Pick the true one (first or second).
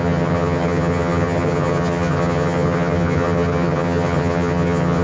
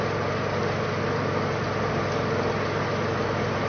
second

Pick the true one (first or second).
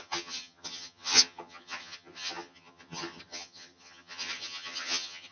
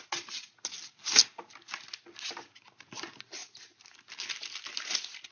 second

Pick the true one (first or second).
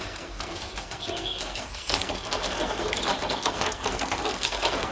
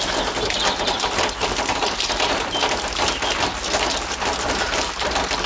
second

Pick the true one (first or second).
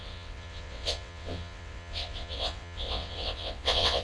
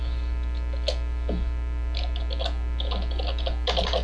second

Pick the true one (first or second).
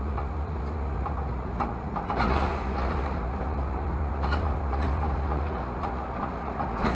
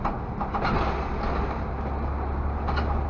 second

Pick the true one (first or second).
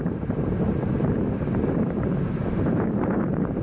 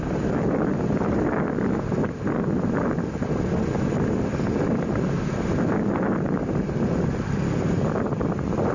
second